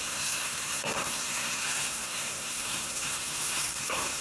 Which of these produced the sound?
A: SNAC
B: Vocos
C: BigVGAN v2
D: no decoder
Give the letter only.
A